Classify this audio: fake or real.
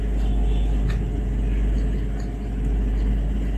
real